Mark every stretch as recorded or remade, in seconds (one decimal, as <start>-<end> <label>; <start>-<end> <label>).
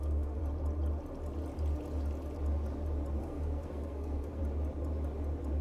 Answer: 0.0-0.4 remade; 0.4-3.2 recorded; 3.2-4.4 remade; 4.4-5.6 recorded